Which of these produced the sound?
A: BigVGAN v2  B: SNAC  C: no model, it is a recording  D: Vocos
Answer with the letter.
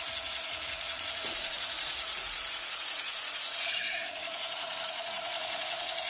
D